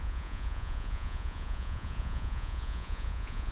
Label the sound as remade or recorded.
remade